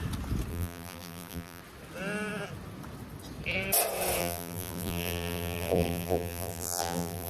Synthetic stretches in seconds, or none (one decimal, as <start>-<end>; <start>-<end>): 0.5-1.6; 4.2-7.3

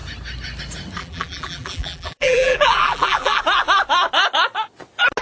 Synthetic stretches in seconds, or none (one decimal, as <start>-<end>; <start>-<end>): 1.0-3.4

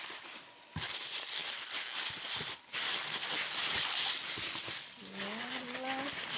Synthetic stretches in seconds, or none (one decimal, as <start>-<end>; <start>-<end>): none

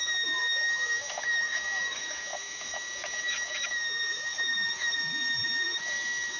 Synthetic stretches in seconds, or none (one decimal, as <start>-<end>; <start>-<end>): 0.0-6.4

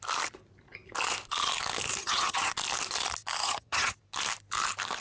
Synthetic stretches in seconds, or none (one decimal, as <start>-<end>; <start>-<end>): 2.0-2.5; 3.4-3.9

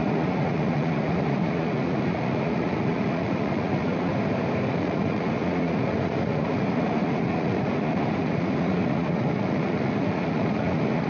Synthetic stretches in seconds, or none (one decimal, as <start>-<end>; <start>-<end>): 0.0-4.1; 4.7-11.1

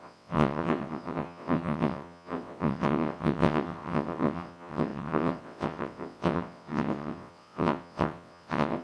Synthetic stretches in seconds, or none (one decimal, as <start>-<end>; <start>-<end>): 0.0-8.8